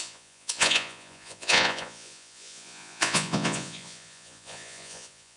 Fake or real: fake